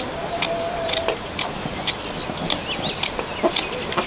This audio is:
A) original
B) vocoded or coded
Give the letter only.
A